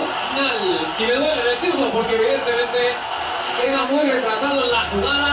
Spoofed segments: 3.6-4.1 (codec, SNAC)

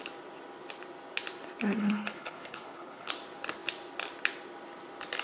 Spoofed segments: 1.8-3.1 (codec, HILCodec)

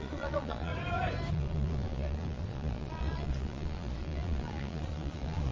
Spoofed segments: 0.0-0.7 (vocoder, Vocos); 1.3-5.5

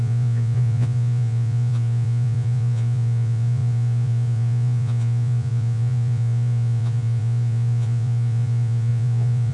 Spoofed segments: 0.0-9.5 (vocoder, Vocos)

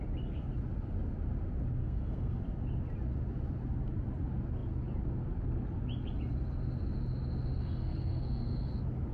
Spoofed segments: 1.8-2.4 (codec, SNAC); 7.6-8.7

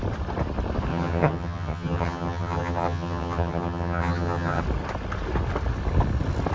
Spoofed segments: 0.9-4.6 (vocoder, HiFi-GAN)

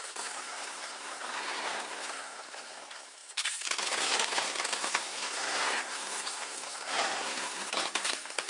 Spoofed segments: 0.0-8.5 (codec, SNAC)

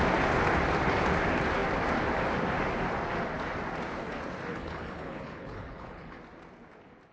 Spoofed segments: 4.5-6.2 (codec, HILCodec)